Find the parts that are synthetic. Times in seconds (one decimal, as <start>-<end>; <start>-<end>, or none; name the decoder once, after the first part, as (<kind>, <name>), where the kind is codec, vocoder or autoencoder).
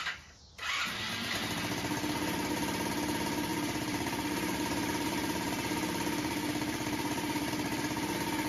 3.5-7.5 (vocoder, BigVGAN v2)